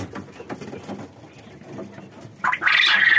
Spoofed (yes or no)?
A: no